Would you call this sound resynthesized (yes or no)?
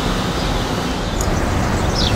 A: no